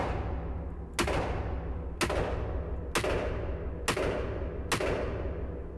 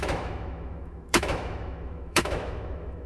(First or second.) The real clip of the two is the first